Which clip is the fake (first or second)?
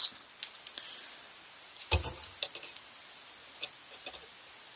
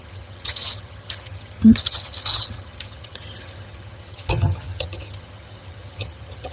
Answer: second